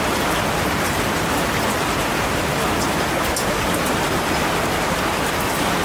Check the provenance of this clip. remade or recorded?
recorded